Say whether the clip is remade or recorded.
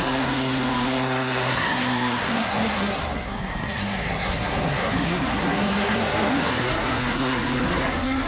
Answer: remade